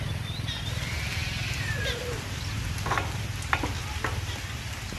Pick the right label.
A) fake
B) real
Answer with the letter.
B